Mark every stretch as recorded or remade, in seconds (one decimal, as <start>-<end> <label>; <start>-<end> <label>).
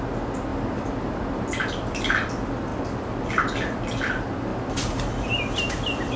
0.0-6.2 recorded